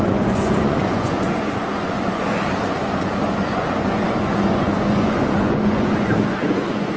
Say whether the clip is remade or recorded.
remade